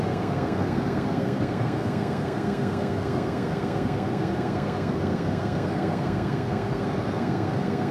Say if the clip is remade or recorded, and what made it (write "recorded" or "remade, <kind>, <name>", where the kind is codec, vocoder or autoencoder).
remade, codec, SNAC